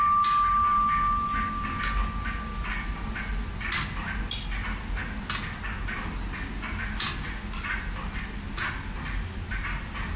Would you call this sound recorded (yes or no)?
yes